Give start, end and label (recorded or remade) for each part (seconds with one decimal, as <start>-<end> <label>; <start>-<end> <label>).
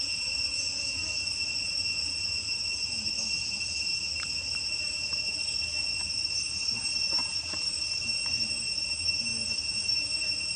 0.0-10.6 recorded